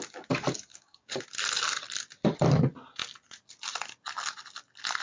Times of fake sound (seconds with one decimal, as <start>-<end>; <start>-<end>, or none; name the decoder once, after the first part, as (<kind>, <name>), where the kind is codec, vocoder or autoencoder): 0.7-1.2 (codec, DAC)